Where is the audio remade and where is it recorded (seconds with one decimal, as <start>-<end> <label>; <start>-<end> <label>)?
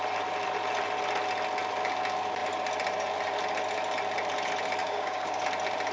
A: 0.0-4.8 recorded; 4.8-5.4 remade; 5.4-5.9 recorded